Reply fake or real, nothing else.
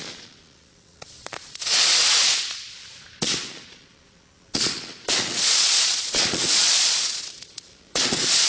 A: fake